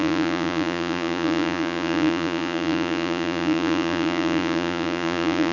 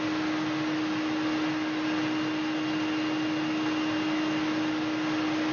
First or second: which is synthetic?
first